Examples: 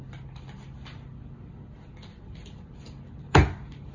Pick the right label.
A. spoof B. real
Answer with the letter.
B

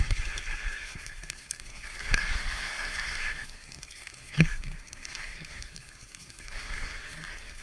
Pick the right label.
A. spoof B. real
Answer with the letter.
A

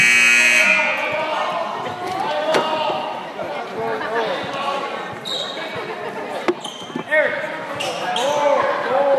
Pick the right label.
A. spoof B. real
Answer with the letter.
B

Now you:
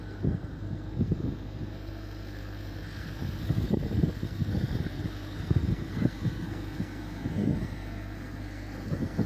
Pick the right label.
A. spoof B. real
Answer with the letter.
A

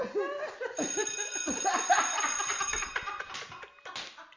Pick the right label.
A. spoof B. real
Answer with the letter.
B